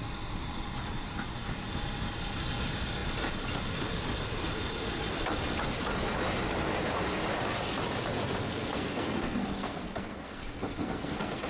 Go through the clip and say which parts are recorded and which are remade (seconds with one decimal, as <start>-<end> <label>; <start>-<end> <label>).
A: 0.0-8.4 recorded; 8.4-11.5 remade